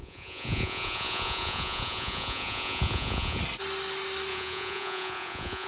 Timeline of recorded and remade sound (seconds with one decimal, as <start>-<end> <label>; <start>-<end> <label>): 0.0-3.4 remade; 3.4-4.3 recorded; 4.3-5.7 remade